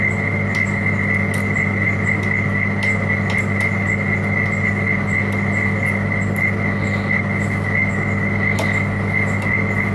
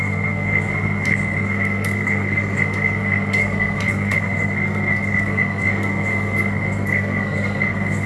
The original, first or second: first